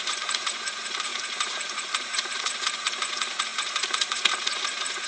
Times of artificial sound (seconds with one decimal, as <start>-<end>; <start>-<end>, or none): 0.0-5.1